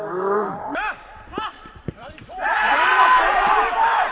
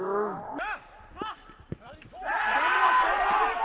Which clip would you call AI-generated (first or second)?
first